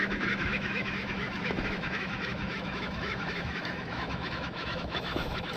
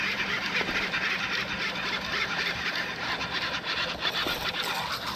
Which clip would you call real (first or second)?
second